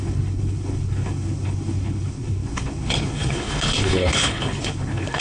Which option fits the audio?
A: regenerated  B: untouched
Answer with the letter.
A